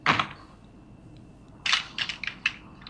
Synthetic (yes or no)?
no